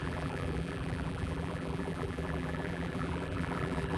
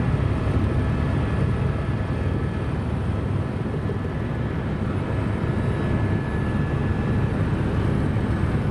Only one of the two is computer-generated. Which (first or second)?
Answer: first